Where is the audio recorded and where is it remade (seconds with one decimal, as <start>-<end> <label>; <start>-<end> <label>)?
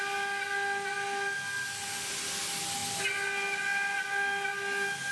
0.0-5.1 recorded